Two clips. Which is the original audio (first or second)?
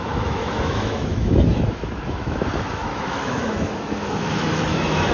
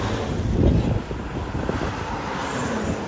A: second